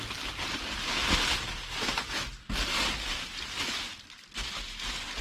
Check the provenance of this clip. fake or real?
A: real